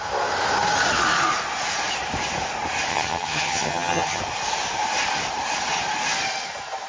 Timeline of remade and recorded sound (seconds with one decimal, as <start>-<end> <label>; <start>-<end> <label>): 0.0-2.9 recorded; 2.9-4.2 remade; 4.2-6.9 recorded